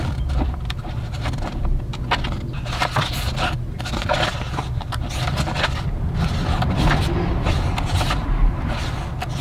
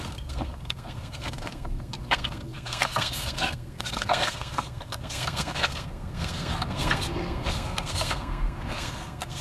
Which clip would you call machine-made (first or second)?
second